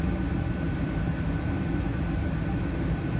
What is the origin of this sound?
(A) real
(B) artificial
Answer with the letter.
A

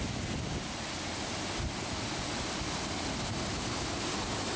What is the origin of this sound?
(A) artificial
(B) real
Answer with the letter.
B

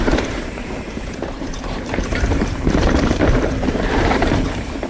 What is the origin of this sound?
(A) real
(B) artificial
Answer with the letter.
B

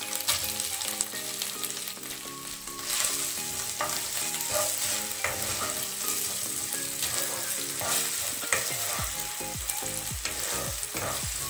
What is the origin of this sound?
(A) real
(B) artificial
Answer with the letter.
A